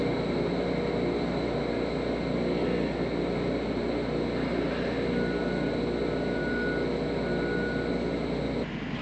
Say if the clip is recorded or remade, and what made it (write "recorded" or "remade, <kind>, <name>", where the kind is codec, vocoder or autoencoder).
recorded